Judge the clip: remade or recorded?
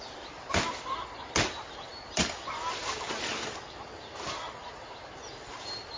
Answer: recorded